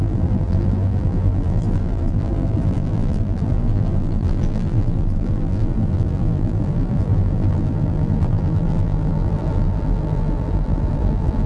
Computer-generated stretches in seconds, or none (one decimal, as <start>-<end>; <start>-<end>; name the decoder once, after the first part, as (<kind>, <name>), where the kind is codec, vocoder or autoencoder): 0.0-11.5 (vocoder, BigVGAN v2)